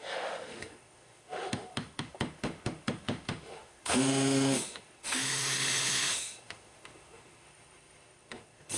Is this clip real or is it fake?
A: fake